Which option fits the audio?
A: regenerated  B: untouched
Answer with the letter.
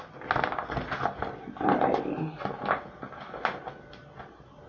B